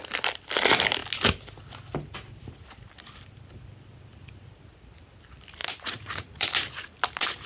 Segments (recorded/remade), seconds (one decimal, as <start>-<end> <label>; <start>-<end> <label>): 0.0-5.6 recorded; 5.6-6.5 remade; 6.5-7.5 recorded